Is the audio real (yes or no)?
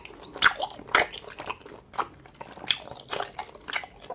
yes